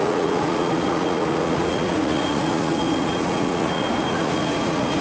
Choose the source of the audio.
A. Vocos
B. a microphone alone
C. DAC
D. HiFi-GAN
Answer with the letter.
A